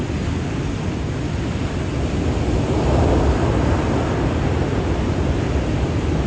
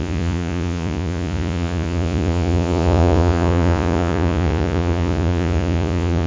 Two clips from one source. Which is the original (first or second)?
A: first